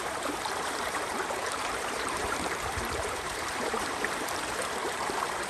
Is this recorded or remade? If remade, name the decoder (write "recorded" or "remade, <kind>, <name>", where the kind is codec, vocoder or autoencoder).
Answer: remade, vocoder, BigVGAN v2